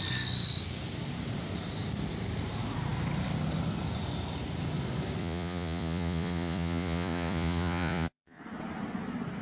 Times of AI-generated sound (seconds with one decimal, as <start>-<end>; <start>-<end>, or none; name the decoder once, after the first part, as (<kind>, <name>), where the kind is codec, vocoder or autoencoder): 5.2-8.4 (vocoder, Vocos)